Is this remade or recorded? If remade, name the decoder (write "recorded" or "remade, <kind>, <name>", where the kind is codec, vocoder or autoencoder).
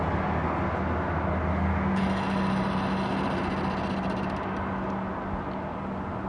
recorded